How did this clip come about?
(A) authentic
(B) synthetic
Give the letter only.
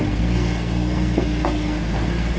B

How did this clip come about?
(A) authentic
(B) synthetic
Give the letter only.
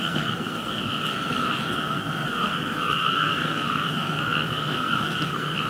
B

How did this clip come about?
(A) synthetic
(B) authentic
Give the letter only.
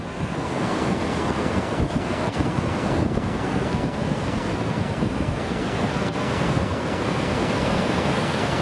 A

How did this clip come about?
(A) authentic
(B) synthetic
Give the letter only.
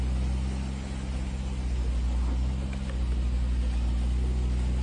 A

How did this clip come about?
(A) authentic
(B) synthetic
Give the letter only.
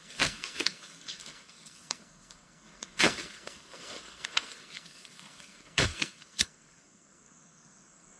B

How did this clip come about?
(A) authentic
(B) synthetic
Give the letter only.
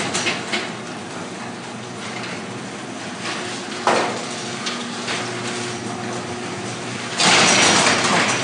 A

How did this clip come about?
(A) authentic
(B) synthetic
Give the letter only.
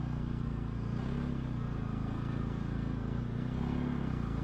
B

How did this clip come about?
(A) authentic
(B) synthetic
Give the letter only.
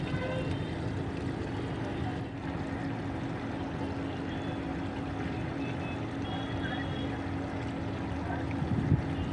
A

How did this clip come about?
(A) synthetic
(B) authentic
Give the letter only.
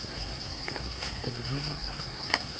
A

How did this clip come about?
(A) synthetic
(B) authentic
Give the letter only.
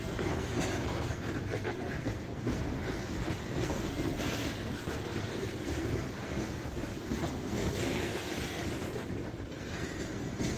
A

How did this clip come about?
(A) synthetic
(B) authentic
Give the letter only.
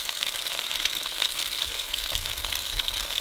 A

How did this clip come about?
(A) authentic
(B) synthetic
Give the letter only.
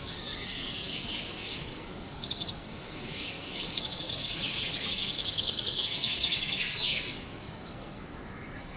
B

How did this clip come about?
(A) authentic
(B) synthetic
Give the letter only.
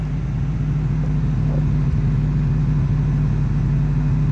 A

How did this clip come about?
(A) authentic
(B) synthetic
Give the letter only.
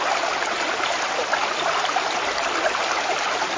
A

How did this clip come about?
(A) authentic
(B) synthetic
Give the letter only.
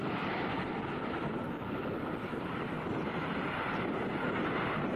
A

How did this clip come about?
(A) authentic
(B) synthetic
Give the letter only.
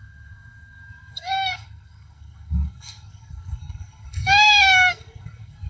B